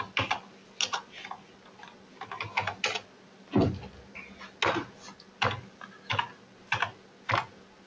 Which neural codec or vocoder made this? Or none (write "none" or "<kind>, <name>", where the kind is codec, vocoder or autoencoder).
none